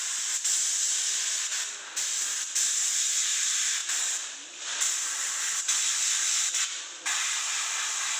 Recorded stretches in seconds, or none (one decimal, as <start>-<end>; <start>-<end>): none